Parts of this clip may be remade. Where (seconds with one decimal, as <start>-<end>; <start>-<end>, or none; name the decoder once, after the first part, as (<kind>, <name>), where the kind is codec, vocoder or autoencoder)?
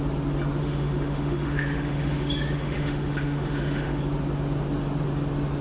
0.6-4.0 (autoencoder, DAC-VAE)